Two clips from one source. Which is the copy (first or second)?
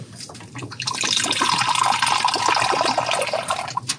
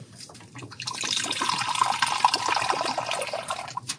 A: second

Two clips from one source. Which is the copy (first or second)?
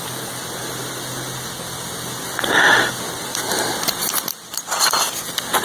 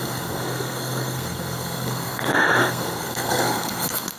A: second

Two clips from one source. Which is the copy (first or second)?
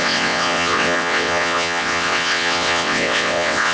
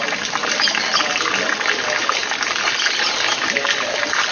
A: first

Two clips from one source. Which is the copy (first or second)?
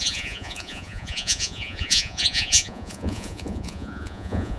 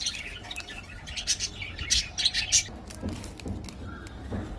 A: first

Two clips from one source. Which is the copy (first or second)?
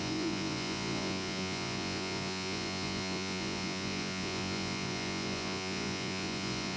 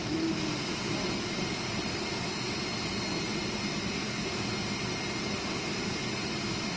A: first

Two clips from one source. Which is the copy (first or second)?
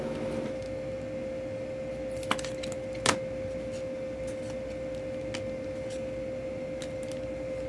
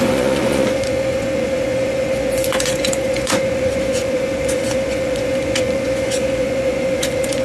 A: second